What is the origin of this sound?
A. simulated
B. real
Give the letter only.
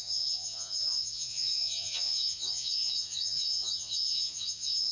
A